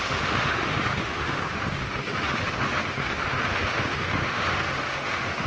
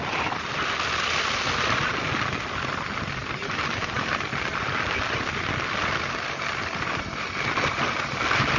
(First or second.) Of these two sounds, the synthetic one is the first